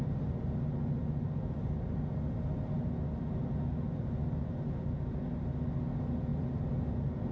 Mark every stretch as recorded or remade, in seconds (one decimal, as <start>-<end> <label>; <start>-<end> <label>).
0.0-6.3 recorded; 6.3-7.3 remade